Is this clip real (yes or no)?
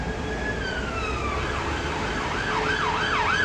yes